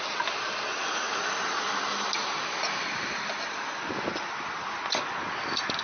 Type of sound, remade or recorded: recorded